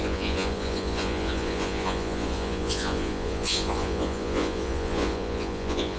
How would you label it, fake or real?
fake